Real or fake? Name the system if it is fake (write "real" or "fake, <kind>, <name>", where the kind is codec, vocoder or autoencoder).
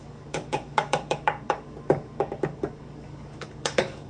fake, codec, DAC